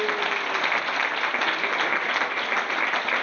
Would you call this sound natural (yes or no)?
yes